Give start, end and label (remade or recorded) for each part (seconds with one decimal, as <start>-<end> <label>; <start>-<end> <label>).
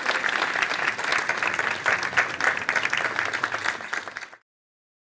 0.0-5.0 recorded